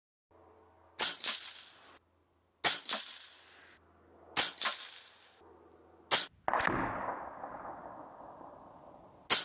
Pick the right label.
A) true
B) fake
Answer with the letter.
A